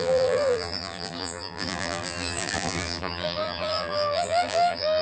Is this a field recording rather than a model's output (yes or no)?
no